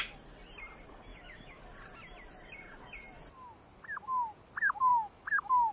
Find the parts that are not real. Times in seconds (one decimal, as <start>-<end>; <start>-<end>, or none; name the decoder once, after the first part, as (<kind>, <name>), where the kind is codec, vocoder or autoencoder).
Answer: 1.1-1.6 (autoencoder, DAC-VAE); 4.9-5.7